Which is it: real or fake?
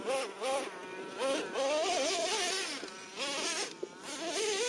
real